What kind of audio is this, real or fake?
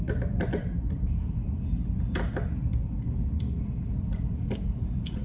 fake